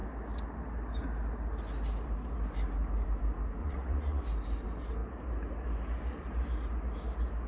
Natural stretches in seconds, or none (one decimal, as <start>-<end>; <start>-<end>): 0.0-3.6; 4.2-7.5